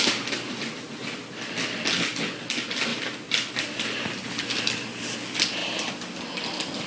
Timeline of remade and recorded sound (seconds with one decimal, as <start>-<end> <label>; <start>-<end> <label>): 0.0-2.9 recorded; 2.9-4.0 remade; 4.0-5.6 recorded; 5.6-6.9 remade